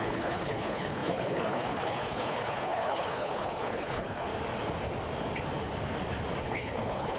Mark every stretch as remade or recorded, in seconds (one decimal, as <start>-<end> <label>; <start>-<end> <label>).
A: 0.0-4.3 remade; 4.3-6.4 recorded; 6.4-7.2 remade